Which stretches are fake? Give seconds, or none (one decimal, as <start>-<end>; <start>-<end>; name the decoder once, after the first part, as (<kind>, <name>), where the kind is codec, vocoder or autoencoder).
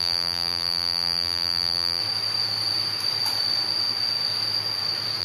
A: 0.0-2.0 (vocoder, BigVGAN v2)